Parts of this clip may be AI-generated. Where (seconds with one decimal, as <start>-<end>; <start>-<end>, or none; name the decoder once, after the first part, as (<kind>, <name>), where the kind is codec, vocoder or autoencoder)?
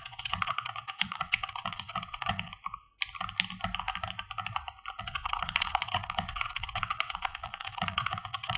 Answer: 0.0-2.5 (vocoder, WaveNeXt); 5.0-8.6